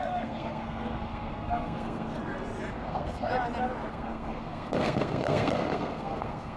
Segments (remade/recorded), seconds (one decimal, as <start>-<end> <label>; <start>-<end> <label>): 0.0-2.2 remade; 2.2-2.7 recorded; 2.7-3.3 remade; 3.3-3.9 recorded; 3.9-6.6 remade